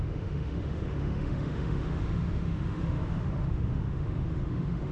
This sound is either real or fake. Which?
fake